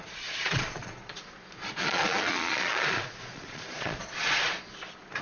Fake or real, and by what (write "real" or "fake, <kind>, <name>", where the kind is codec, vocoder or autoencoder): fake, vocoder, Vocos